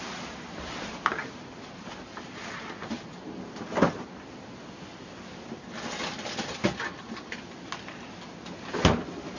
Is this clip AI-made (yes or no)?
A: no